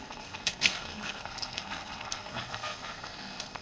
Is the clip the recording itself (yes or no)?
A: no